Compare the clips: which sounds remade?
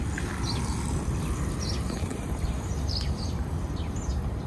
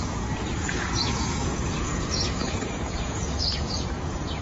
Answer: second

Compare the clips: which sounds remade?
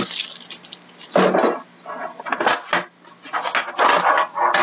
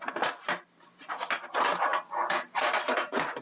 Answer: second